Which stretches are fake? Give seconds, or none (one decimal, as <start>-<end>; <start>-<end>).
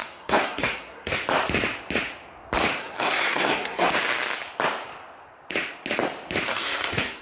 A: 0.0-1.2; 2.8-3.9; 6.5-7.2